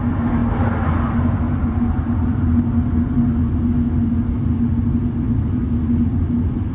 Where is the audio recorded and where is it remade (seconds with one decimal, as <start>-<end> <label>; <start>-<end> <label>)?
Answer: 0.0-6.7 recorded